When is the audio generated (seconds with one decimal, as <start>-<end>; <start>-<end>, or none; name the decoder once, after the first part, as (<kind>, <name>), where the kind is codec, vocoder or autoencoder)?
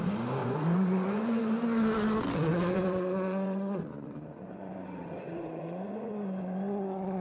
0.4-1.4 (vocoder, Vocos); 2.5-6.1